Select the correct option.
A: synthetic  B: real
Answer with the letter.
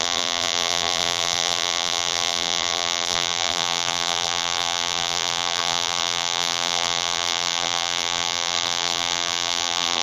A